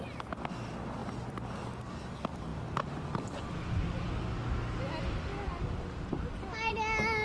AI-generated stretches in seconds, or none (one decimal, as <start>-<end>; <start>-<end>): 2.5-4.3; 5.3-6.7